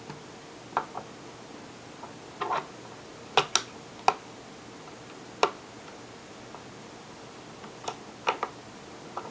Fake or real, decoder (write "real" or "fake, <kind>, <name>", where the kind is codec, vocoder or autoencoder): real